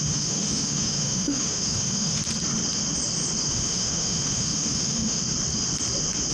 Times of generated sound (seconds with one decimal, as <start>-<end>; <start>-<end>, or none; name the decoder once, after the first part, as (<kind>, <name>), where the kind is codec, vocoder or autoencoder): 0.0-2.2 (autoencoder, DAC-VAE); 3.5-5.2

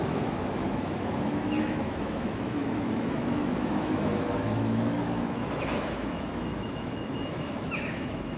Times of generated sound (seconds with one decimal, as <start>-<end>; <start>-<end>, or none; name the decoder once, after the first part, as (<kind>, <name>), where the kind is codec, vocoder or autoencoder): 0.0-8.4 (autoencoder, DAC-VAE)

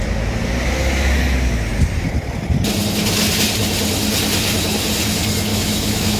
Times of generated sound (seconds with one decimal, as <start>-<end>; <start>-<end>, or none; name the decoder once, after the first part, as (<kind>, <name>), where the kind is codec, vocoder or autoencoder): 5.5-6.2 (autoencoder, DAC-VAE)